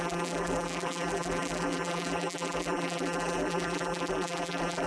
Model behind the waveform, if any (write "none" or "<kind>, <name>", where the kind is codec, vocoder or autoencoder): vocoder, BigVGAN v2